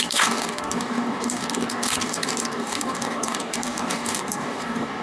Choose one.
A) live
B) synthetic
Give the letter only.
B